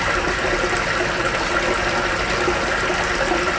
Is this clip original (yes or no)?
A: yes